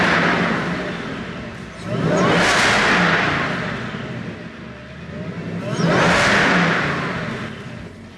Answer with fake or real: real